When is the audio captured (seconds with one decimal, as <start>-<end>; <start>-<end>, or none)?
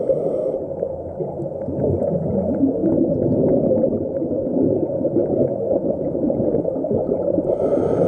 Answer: 0.0-5.2; 6.4-8.1